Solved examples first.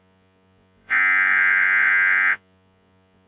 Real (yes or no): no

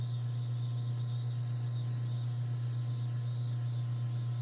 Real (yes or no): yes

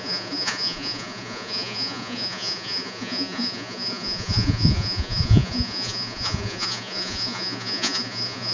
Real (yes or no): no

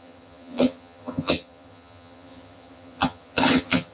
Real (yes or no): no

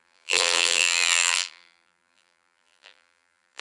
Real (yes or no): no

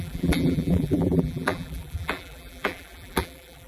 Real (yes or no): no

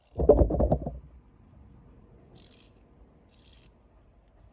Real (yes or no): yes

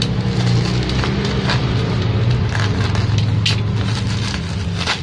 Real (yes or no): yes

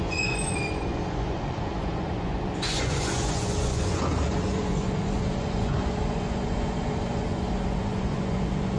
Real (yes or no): no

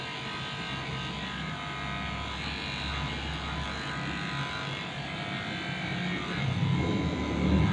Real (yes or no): yes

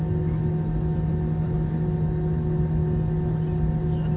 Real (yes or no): yes